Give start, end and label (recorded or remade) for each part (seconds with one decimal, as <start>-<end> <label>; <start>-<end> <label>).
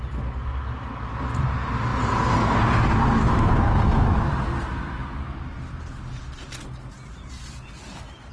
0.0-8.3 recorded